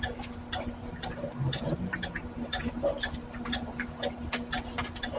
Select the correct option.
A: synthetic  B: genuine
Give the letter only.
B